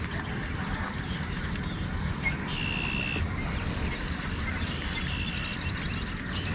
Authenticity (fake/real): real